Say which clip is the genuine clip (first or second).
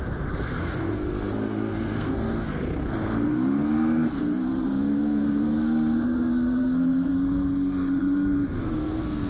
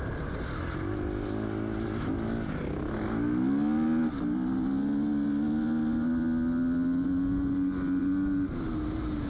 second